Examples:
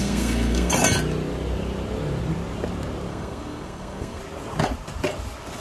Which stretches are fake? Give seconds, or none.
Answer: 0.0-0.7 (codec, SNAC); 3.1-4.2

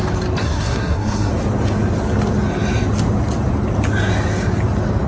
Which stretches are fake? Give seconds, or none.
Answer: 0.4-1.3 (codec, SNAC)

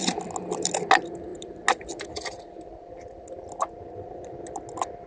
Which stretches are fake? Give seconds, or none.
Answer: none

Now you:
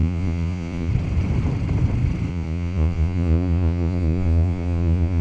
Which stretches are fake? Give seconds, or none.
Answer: 0.0-0.9 (vocoder, Vocos); 2.3-5.2

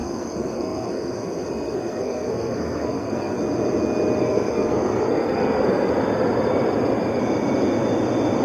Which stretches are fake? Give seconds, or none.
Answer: 0.0-3.4 (codec, SNAC); 4.2-5.9

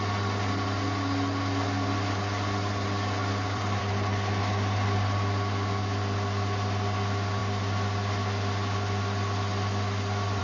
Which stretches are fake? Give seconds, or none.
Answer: 3.2-3.9 (vocoder, BigVGAN v2)

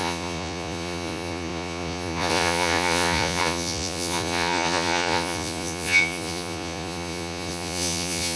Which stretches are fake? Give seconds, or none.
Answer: 0.0-8.4 (vocoder, Vocos)